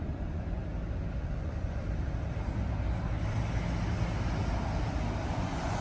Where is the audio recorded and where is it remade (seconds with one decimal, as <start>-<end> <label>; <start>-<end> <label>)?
0.0-0.6 remade; 0.6-1.2 recorded; 1.2-1.8 remade; 1.8-5.3 recorded; 5.3-5.8 remade